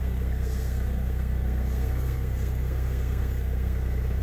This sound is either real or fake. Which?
fake